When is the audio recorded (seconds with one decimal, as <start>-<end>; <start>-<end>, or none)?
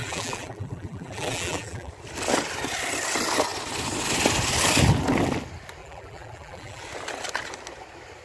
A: 1.9-5.8; 6.8-8.2